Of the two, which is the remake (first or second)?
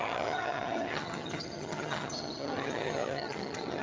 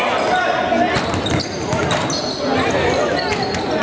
first